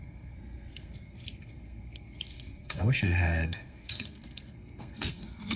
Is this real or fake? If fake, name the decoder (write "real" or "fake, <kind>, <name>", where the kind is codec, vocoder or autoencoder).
fake, codec, SNAC